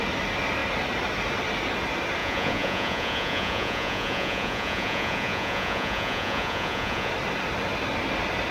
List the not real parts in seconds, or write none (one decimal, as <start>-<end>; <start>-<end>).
2.2-7.1